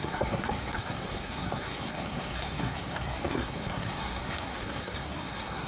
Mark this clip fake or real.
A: fake